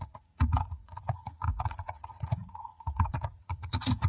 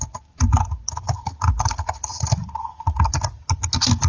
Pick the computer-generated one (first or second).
first